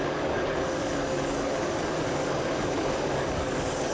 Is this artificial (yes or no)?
yes